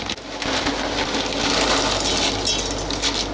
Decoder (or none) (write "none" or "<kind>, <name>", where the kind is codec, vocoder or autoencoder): none